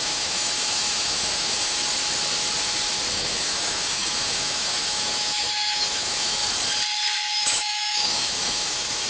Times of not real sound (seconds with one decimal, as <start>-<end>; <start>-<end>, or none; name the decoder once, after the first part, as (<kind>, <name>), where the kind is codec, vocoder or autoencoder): 0.0-1.8 (autoencoder, DAC-VAE); 3.1-6.4; 7.4-9.1